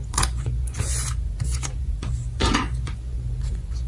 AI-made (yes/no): yes